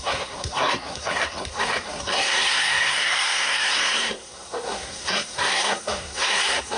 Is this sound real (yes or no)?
no